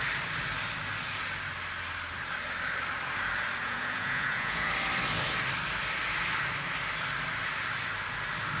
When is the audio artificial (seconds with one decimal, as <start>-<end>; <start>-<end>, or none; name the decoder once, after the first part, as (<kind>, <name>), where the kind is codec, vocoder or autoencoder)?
3.6-4.7 (vocoder, Vocos)